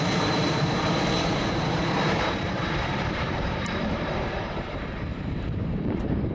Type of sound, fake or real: fake